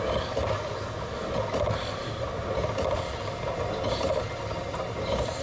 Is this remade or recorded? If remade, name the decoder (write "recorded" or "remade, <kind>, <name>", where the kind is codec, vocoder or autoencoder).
recorded